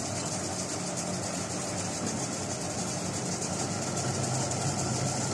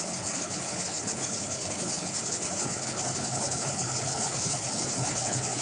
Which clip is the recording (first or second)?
first